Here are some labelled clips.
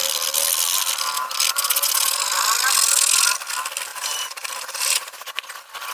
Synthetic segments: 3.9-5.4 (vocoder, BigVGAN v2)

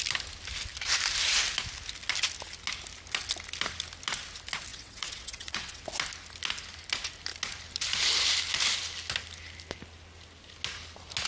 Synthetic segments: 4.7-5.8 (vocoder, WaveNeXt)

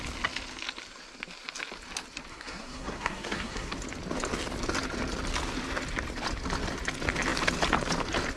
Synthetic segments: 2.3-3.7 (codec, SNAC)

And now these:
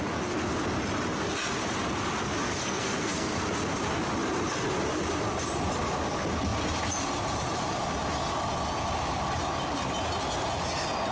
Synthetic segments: 2.6-3.4 (codec, SNAC)

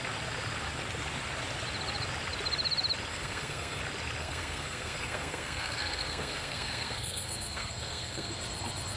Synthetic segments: 3.1-3.8 (codec, SNAC); 4.2-8.3

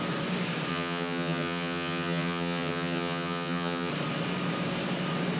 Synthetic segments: 0.7-3.9 (vocoder, HiFi-GAN)